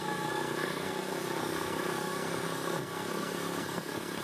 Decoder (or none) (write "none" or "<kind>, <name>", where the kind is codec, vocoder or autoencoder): codec, SNAC